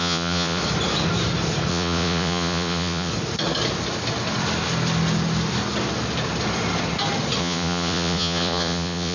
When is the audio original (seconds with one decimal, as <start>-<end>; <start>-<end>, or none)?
0.6-1.7; 3.1-7.4